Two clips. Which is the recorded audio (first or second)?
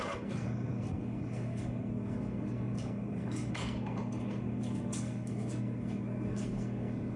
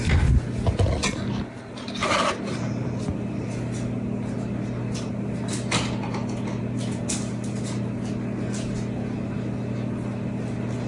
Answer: second